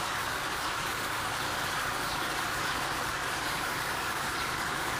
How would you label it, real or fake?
fake